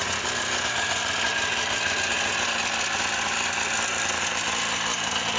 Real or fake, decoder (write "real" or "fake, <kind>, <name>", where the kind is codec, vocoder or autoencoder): real